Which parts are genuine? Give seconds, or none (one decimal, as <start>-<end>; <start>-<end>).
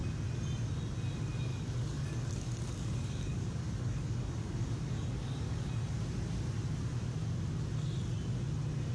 0.0-1.5; 5.7-8.9